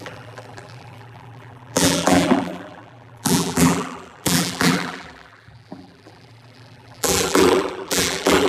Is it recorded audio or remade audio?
remade